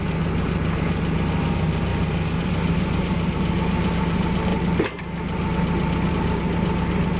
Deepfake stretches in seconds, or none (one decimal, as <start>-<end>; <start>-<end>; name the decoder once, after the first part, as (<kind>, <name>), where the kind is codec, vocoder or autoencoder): none